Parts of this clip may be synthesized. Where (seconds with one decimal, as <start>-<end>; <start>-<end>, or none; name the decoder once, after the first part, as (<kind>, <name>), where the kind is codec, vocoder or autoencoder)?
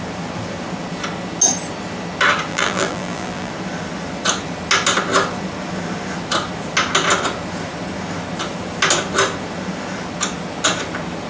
2.5-3.5 (vocoder, BigVGAN v2)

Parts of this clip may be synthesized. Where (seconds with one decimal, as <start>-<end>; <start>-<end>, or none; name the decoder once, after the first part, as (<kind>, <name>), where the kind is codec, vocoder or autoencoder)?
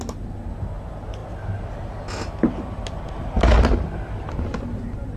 none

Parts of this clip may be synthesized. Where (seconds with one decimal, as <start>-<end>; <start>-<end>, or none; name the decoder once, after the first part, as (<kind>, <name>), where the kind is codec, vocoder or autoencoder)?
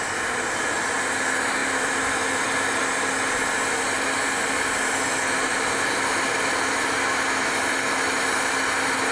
none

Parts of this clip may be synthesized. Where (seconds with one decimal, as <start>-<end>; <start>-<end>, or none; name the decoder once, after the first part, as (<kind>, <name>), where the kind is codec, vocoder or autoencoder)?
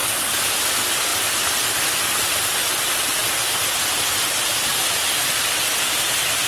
none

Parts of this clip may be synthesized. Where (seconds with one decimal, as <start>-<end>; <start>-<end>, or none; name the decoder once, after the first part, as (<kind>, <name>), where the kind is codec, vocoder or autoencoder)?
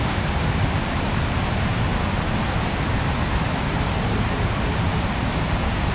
0.0-1.9 (vocoder, BigVGAN v2); 3.8-5.9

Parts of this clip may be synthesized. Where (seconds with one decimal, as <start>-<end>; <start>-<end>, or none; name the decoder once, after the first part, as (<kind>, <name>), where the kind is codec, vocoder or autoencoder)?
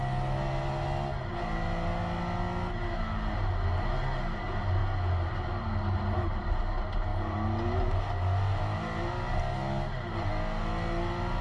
none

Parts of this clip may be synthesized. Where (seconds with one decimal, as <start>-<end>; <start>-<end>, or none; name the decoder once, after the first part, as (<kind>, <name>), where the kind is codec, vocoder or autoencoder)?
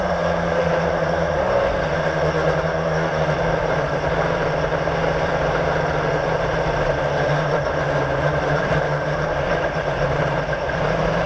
3.6-4.6 (vocoder, BigVGAN v2); 5.0-9.3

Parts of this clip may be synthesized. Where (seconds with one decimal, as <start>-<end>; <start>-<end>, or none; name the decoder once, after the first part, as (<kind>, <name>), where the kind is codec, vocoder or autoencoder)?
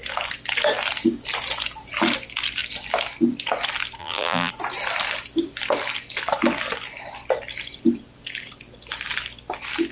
4.0-4.5 (vocoder, BigVGAN v2)